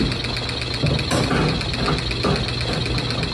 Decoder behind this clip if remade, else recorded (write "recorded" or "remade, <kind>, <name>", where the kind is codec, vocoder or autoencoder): recorded